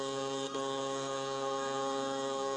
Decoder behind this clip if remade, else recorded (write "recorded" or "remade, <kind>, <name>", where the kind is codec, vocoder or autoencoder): remade, codec, SNAC